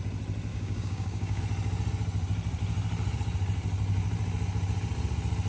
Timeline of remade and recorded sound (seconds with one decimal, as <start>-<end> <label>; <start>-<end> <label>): 0.0-0.5 recorded; 0.5-1.4 remade; 1.4-5.5 recorded